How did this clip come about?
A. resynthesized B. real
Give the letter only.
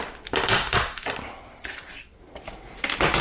B